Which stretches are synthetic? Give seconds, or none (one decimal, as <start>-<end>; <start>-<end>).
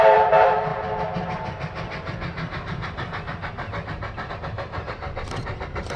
0.0-0.7; 4.3-6.0